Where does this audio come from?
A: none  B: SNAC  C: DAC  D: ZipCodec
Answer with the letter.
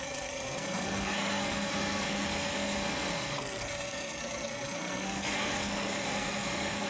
B